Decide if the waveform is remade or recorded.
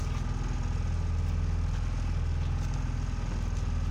recorded